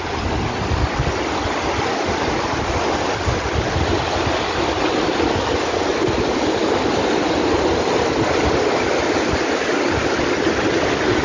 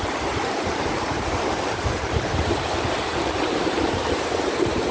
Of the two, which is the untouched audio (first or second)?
first